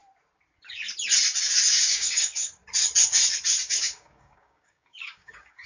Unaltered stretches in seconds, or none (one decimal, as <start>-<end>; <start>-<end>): 0.0-1.7; 2.6-3.7